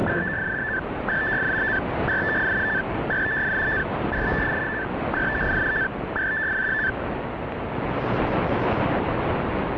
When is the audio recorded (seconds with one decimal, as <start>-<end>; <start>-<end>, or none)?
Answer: 1.2-6.6; 7.2-9.8